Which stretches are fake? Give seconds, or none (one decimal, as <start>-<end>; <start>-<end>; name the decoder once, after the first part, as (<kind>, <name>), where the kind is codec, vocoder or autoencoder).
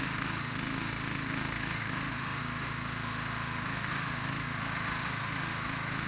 0.0-6.1 (autoencoder, DAC-VAE)